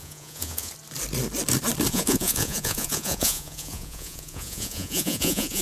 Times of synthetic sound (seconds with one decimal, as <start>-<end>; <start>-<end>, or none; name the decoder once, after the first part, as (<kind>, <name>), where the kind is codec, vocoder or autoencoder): 0.0-0.7 (vocoder, Vocos); 1.9-5.6